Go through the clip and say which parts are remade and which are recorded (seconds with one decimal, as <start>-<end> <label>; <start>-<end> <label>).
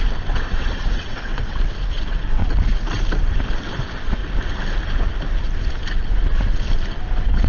0.0-2.4 remade; 2.4-3.8 recorded; 3.8-4.2 remade; 4.2-7.0 recorded; 7.0-7.5 remade